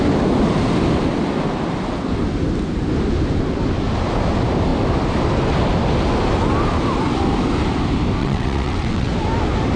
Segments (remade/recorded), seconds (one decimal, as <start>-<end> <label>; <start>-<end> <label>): 0.0-8.2 recorded; 8.2-9.1 remade; 9.1-9.8 recorded